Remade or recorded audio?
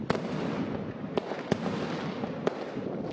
recorded